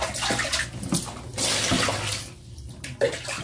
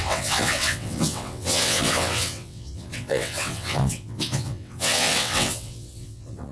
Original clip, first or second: first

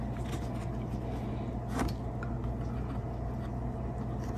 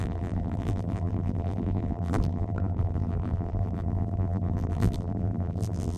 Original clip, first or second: first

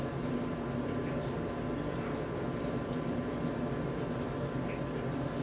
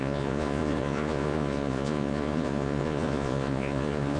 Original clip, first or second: first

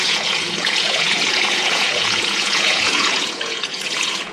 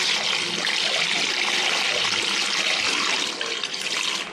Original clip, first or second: second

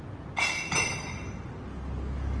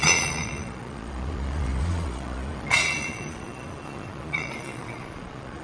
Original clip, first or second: first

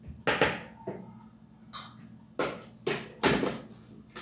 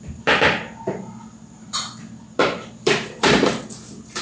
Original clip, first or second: first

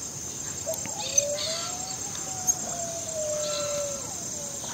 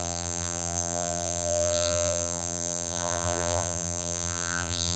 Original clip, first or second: first